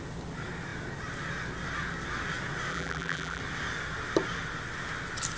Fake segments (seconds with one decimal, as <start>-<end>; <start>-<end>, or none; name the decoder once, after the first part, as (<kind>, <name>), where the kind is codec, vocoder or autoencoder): 2.7-3.4 (vocoder, BigVGAN v2)